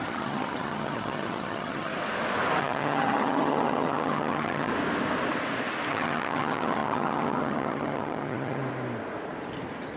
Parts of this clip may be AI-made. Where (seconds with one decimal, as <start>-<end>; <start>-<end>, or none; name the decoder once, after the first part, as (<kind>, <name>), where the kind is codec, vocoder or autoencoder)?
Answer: 0.0-1.9 (vocoder, HiFi-GAN); 2.6-4.7; 5.9-8.6